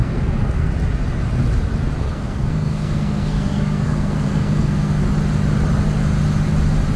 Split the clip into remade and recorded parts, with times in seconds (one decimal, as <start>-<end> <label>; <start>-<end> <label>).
0.0-0.7 remade; 0.7-2.0 recorded; 2.0-5.0 remade; 5.0-7.0 recorded